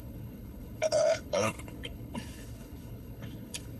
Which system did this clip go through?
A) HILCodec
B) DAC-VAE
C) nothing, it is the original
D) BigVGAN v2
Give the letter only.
A